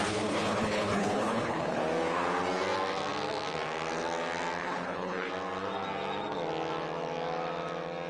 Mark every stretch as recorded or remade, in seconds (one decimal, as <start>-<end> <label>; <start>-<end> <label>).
0.0-1.8 remade; 1.8-4.6 recorded; 4.6-5.3 remade; 5.3-8.1 recorded